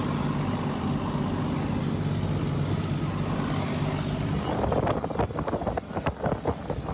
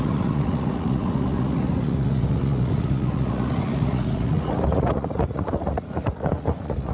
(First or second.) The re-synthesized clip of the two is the second